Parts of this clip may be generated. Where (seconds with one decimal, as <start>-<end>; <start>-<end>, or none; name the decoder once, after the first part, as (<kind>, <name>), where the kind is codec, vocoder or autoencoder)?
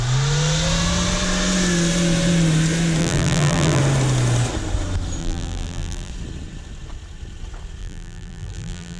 3.0-3.8 (vocoder, BigVGAN v2); 5.2-6.1; 7.8-9.0